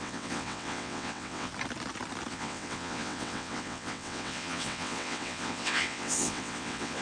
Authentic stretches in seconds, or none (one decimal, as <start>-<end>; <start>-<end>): 1.5-2.3